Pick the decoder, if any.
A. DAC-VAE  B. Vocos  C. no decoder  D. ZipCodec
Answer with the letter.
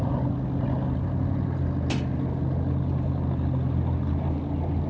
C